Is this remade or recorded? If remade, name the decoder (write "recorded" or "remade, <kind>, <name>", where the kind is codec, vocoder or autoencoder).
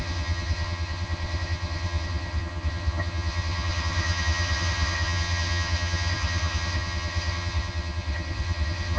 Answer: remade, vocoder, HiFi-GAN